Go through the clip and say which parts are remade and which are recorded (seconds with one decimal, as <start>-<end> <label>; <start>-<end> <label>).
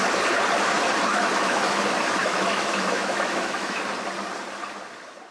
0.0-1.1 recorded; 1.1-1.8 remade; 1.8-2.2 recorded; 2.2-3.8 remade; 3.8-5.3 recorded